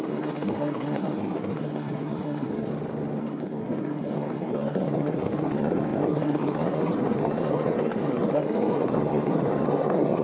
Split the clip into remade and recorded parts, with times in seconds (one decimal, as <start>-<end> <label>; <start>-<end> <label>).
0.0-2.7 remade; 2.7-3.2 recorded; 3.2-10.2 remade